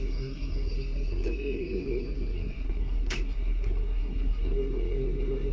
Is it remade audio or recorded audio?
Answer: remade